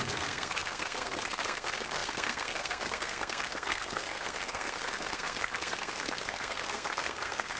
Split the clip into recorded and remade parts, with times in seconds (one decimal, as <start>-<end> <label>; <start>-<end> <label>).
0.0-7.6 remade